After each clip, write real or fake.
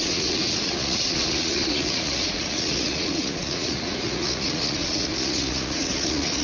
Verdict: fake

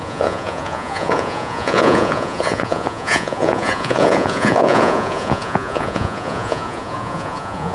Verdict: fake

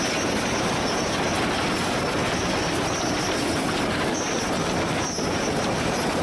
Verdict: real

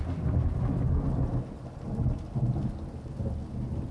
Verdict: real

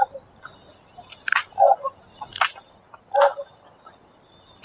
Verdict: real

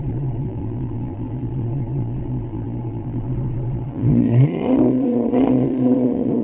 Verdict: fake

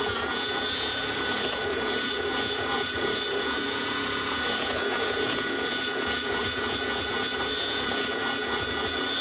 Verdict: fake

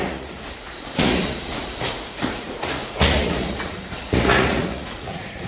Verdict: fake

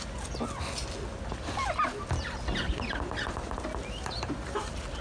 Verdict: real